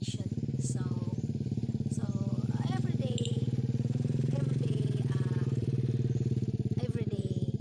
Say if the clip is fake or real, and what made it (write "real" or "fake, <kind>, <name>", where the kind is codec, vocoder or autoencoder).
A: fake, vocoder, BigVGAN v2